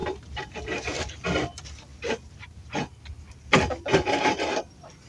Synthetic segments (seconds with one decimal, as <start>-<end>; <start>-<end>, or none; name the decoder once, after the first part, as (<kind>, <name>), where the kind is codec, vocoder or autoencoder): 0.0-1.0 (vocoder, BigVGAN v2); 3.9-4.6